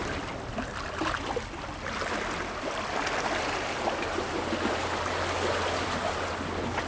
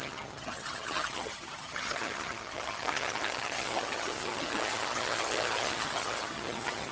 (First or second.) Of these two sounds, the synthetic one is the second